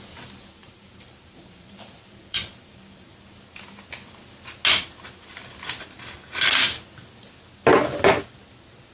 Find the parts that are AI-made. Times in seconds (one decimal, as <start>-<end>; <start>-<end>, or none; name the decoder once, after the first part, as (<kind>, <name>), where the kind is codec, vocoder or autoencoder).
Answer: 0.6-3.1 (vocoder, BigVGAN v2)